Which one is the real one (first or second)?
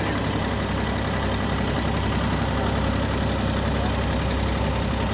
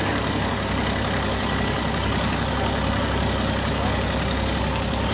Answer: first